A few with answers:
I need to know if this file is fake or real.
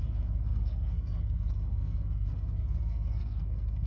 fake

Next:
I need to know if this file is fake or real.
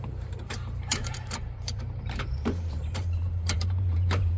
fake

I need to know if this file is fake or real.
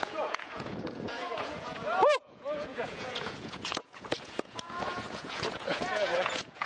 fake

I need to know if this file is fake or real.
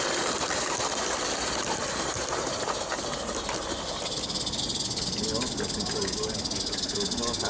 real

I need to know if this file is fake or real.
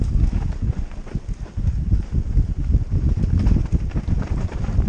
real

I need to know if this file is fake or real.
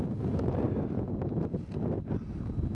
real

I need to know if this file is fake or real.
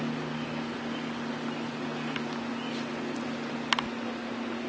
real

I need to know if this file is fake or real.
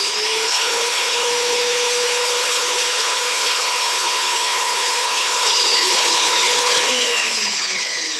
fake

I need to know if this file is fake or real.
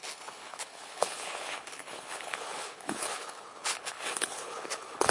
fake